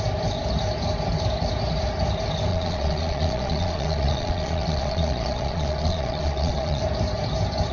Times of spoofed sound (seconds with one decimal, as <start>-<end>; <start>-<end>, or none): 2.5-6.8